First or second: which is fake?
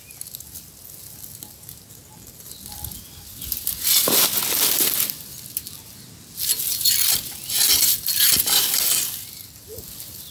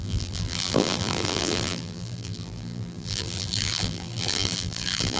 second